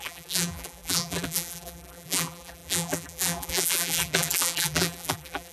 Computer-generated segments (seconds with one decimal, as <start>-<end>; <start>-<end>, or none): 0.0-5.5